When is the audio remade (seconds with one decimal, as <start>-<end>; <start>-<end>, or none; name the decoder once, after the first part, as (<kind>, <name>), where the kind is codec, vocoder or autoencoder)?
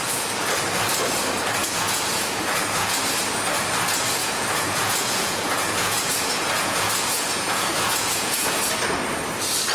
1.6-2.9 (vocoder, Vocos); 4.2-8.5